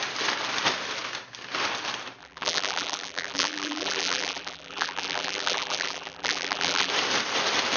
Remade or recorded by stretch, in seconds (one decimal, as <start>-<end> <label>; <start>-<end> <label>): 0.0-2.2 recorded; 2.2-6.9 remade; 6.9-7.8 recorded